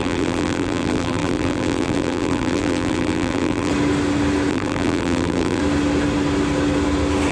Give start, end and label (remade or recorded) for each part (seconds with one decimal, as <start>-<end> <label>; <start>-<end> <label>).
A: 0.0-3.7 remade; 3.7-4.5 recorded; 4.5-5.6 remade; 5.6-7.3 recorded